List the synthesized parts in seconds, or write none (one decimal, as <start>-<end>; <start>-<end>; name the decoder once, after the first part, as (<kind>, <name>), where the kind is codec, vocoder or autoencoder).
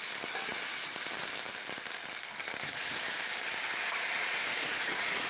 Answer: 4.2-5.3 (vocoder, Vocos)